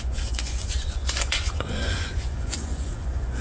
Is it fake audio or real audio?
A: fake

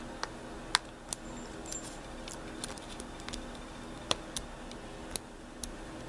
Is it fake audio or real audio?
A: real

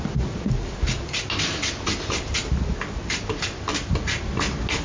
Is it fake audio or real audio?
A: real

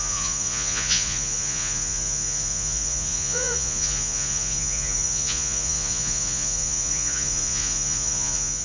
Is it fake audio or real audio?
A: fake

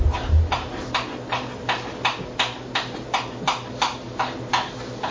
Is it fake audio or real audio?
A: real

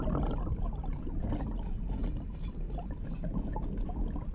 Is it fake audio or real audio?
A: real